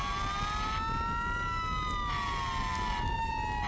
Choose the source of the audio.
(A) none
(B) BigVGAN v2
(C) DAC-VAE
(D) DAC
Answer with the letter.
A